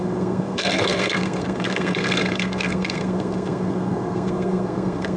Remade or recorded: remade